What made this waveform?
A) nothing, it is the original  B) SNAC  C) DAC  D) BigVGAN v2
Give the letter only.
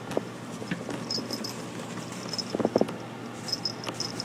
A